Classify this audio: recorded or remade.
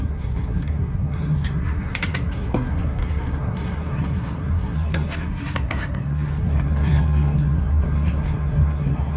remade